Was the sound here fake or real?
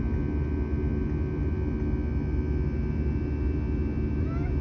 real